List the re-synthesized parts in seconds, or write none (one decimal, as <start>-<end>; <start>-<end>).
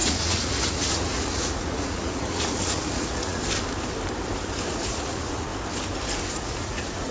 0.0-3.4; 4.7-5.5; 6.3-7.1